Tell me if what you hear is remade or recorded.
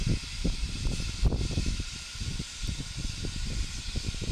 recorded